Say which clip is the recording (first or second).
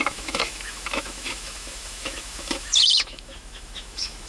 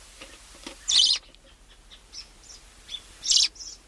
second